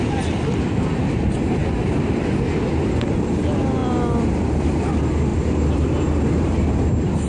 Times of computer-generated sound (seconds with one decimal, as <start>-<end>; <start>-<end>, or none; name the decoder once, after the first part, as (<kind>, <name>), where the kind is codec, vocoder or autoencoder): 1.6-3.2 (vocoder, BigVGAN v2); 3.8-4.7; 5.3-7.3